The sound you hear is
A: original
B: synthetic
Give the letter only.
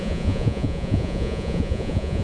B